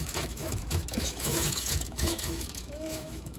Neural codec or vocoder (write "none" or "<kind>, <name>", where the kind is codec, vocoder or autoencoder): autoencoder, DAC-VAE